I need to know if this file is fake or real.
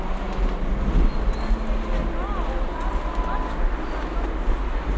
real